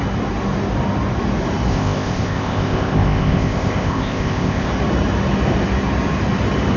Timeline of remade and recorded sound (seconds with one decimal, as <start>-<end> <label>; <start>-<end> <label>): 0.0-1.7 recorded; 1.7-4.7 remade; 4.7-6.8 recorded